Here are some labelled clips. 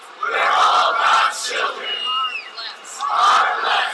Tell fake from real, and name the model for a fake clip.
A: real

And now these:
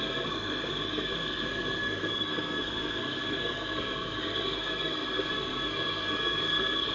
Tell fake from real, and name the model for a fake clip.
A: fake, codec, SNAC